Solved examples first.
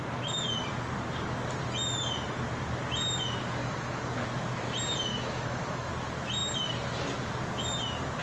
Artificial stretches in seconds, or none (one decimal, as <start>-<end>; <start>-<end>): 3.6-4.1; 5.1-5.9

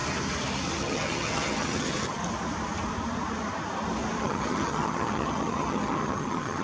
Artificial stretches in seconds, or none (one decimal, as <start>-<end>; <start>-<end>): 0.8-2.2; 4.2-6.6

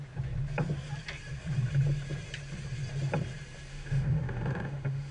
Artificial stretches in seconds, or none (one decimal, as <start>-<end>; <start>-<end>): 3.7-5.1

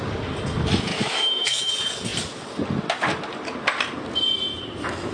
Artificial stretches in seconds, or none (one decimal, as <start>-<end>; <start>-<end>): 0.9-1.7

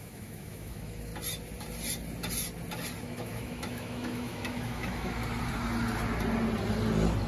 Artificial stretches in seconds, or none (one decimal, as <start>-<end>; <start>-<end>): 0.0-1.1; 3.0-5.2

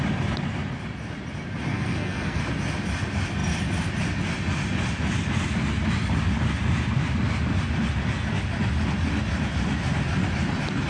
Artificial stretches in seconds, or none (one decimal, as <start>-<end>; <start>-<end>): 1.7-2.4